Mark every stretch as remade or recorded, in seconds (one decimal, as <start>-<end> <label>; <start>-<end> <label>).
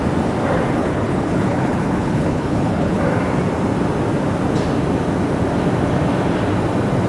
0.0-0.8 recorded; 0.8-3.0 remade; 3.0-7.1 recorded